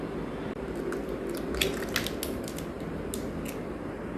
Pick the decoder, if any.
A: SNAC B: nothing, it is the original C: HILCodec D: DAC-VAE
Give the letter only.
B